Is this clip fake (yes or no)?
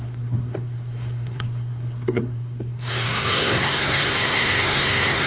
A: yes